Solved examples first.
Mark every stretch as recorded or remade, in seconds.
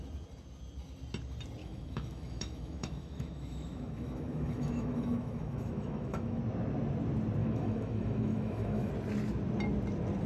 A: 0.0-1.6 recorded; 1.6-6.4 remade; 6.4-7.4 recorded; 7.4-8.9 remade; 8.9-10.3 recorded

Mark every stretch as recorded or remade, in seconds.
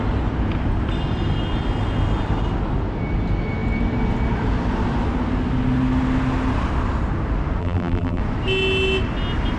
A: 0.0-7.6 recorded; 7.6-8.2 remade; 8.2-9.6 recorded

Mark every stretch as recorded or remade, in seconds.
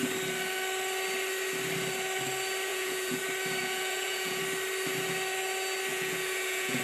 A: 0.0-2.7 recorded; 2.7-3.2 remade; 3.2-3.6 recorded; 3.6-4.4 remade; 4.4-5.9 recorded; 5.9-6.8 remade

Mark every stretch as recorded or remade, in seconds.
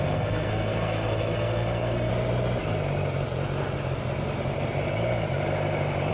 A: 0.0-2.1 remade; 2.1-6.1 recorded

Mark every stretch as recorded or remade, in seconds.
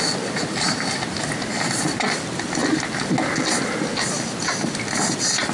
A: 0.0-5.5 recorded